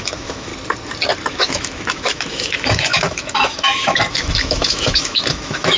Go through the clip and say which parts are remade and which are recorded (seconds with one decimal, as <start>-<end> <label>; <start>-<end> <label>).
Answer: 0.0-0.5 remade; 0.5-1.3 recorded; 1.3-5.8 remade